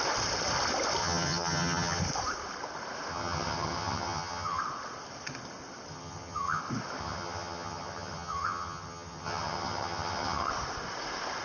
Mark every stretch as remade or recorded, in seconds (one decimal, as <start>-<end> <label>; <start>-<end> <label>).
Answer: 0.0-1.0 recorded; 1.0-2.0 remade; 2.0-3.1 recorded; 3.1-4.6 remade; 4.6-5.9 recorded; 5.9-6.6 remade; 6.6-7.0 recorded; 7.0-10.5 remade; 10.5-11.4 recorded